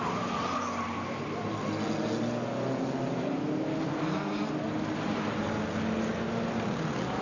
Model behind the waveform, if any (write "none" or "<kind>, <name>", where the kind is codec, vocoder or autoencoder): none